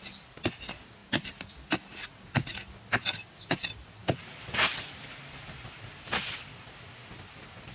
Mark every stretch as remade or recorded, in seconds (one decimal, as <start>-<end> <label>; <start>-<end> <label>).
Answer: 0.0-1.0 recorded; 1.0-1.5 remade; 1.5-4.0 recorded; 4.0-5.9 remade; 5.9-7.7 recorded